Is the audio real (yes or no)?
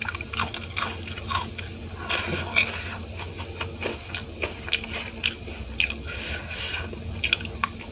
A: yes